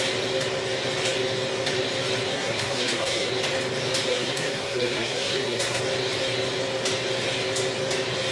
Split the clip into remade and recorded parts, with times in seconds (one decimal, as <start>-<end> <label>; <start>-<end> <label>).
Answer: 0.0-2.3 recorded; 2.3-3.3 remade; 3.3-4.1 recorded; 4.1-5.8 remade; 5.8-8.3 recorded